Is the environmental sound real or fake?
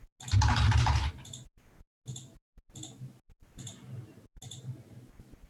real